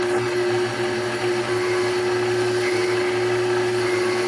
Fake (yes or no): no